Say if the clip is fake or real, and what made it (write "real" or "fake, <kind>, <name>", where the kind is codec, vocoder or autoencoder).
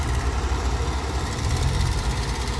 fake, vocoder, BigVGAN v2